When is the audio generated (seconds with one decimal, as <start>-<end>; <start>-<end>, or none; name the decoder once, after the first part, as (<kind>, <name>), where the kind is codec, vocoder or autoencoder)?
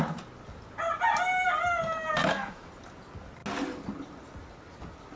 2.2-2.7 (autoencoder, DAC-VAE)